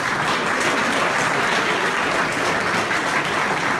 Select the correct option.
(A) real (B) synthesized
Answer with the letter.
A